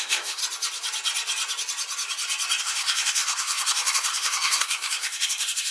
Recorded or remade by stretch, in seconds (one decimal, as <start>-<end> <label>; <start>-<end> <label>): 0.0-0.4 remade; 0.4-2.6 recorded; 2.6-5.7 remade